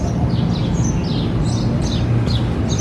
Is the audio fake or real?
real